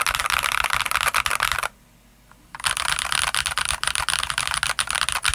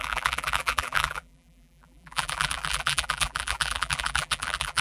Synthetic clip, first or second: second